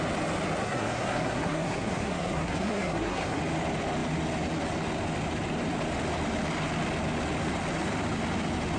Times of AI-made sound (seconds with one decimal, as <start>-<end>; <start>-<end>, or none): 0.6-3.4